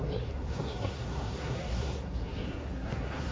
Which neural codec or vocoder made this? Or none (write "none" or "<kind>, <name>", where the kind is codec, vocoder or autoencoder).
codec, SNAC